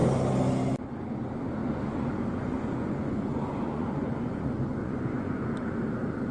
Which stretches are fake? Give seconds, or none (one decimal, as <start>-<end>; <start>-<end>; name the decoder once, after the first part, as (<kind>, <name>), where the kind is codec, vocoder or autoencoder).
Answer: 1.6-5.4 (vocoder, Vocos)